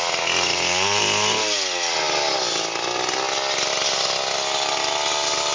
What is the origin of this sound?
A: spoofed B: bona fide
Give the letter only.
B